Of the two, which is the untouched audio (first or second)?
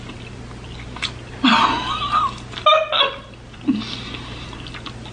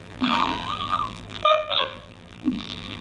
first